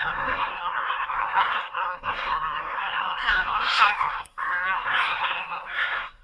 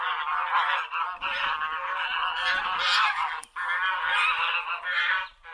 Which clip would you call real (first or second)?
second